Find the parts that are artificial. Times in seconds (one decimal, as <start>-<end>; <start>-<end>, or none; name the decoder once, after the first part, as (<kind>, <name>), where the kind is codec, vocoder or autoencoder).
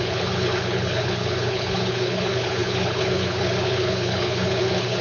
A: 0.0-5.0 (codec, HILCodec)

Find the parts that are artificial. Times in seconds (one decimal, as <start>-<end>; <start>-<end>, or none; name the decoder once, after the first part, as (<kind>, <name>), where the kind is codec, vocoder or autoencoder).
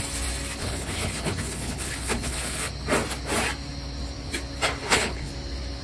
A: 0.6-2.7 (codec, HILCodec); 4.8-5.3